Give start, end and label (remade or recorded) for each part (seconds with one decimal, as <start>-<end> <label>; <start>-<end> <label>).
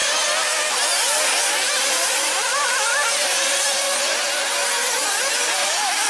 0.0-1.8 recorded; 1.8-3.0 remade; 3.0-5.5 recorded; 5.5-6.1 remade